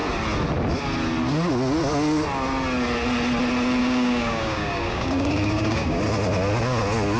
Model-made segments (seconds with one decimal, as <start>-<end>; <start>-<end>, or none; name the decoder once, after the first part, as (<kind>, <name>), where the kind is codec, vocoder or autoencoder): 3.8-6.0 (codec, DAC)